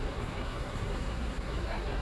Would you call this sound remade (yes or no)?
yes